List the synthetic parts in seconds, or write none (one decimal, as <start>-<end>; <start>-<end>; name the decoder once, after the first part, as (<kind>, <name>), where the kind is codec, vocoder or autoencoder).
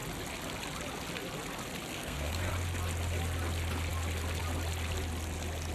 1.9-2.5 (codec, SNAC)